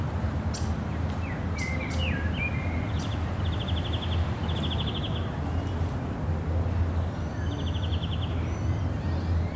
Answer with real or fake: real